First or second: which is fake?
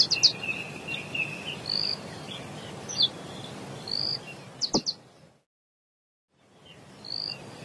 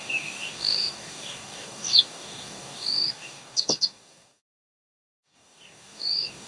second